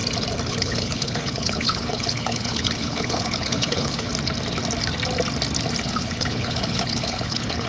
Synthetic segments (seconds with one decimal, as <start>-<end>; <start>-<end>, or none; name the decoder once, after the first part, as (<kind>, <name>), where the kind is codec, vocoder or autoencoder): 0.5-4.1 (codec, HILCodec); 5.8-7.7